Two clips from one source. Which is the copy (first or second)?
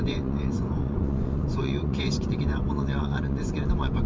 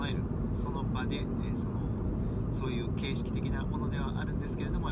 first